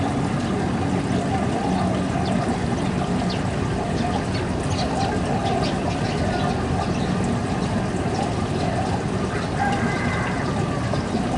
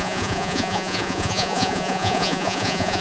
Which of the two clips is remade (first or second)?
second